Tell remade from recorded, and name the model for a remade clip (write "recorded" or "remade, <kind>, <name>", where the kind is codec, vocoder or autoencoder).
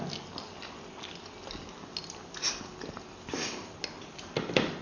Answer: recorded